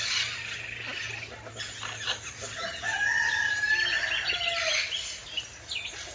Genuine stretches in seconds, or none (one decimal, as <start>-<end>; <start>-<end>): 0.0-6.1